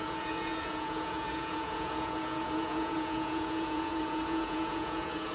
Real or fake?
fake